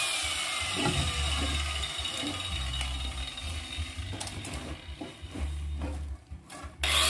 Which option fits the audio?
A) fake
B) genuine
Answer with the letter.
B